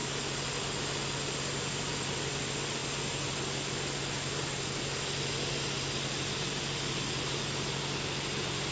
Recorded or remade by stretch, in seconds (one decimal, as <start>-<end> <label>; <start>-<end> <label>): 0.0-8.7 recorded

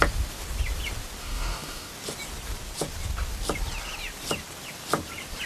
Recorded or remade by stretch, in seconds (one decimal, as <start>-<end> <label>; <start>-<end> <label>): 0.0-1.2 recorded; 1.2-1.9 remade; 1.9-5.5 recorded

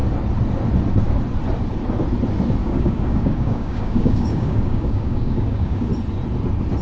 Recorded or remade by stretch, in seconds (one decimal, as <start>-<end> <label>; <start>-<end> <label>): 0.0-2.6 recorded; 2.6-5.9 remade; 5.9-6.8 recorded

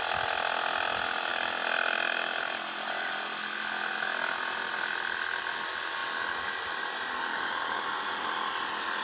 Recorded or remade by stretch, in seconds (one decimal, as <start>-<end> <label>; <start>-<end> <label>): 0.0-7.3 recorded; 7.3-7.8 remade; 7.8-9.0 recorded